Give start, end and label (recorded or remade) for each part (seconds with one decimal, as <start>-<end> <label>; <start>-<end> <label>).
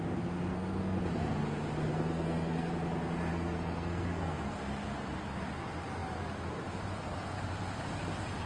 0.0-0.4 recorded; 0.4-1.0 remade; 1.0-1.9 recorded; 1.9-2.7 remade; 2.7-3.3 recorded; 3.3-4.6 remade; 4.6-8.5 recorded